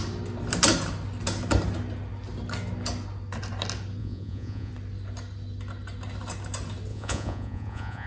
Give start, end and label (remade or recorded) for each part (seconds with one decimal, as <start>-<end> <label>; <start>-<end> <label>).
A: 0.0-4.0 recorded; 4.0-4.7 remade; 4.7-6.9 recorded; 6.9-8.1 remade